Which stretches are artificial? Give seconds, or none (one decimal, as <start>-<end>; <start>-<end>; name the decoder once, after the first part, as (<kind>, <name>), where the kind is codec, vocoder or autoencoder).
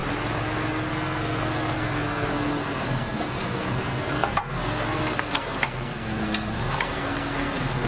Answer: 0.9-7.9 (codec, SNAC)